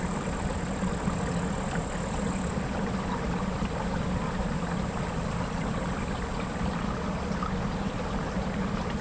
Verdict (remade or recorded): recorded